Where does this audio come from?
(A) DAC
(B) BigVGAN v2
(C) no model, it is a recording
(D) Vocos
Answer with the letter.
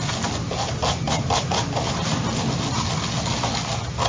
C